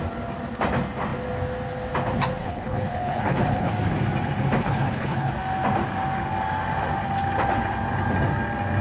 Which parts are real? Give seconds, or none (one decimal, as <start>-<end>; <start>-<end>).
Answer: 0.0-2.4; 3.7-4.6; 5.3-8.8